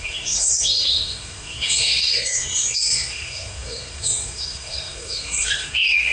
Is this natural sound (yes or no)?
no